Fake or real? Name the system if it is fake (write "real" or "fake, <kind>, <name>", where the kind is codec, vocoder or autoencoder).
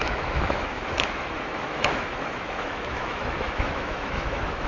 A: fake, autoencoder, DAC-VAE